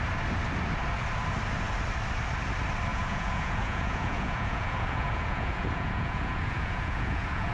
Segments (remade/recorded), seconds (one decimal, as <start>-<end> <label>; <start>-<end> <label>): 0.0-2.9 recorded; 2.9-7.5 remade